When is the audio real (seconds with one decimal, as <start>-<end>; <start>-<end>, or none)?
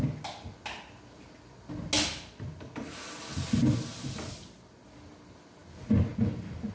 0.0-6.7